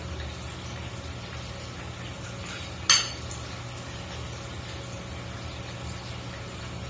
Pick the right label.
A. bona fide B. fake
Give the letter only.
A